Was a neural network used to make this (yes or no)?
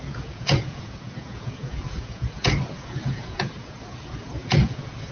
yes